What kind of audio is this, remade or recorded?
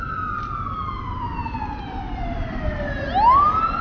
recorded